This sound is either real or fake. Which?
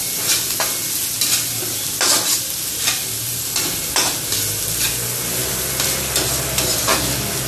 real